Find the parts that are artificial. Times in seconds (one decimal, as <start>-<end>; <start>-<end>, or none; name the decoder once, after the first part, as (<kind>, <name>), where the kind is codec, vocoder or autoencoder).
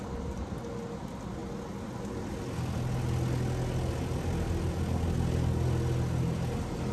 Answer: none